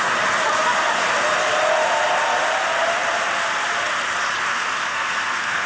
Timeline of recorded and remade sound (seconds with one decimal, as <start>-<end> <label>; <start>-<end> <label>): 0.0-4.5 recorded; 4.5-5.7 remade

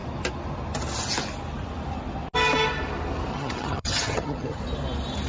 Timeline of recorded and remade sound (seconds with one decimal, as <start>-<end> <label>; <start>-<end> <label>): 0.0-3.3 recorded; 3.3-4.6 remade; 4.6-5.3 recorded

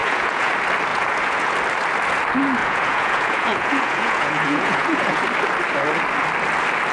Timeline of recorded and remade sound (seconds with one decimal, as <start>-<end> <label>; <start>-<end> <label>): 0.0-0.5 remade; 0.5-0.9 recorded; 0.9-1.5 remade; 1.5-2.6 recorded; 2.6-5.2 remade; 5.2-6.9 recorded

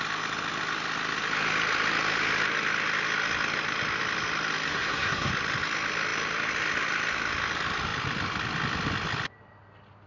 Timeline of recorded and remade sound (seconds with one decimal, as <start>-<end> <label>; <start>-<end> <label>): 0.0-4.7 recorded; 4.7-5.3 remade; 5.3-10.1 recorded

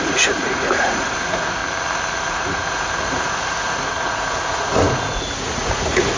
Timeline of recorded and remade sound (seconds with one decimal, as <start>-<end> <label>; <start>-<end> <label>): 0.0-1.6 remade; 1.6-2.2 recorded; 2.2-6.2 remade